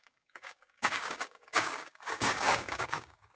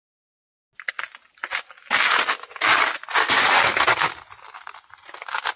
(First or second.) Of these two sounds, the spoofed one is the first